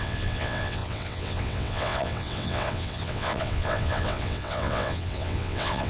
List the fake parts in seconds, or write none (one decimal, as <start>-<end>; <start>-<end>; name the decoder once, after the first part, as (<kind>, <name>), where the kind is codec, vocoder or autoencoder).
0.0-5.9 (vocoder, WaveNeXt)